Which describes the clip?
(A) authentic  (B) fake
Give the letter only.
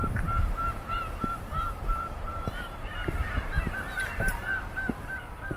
B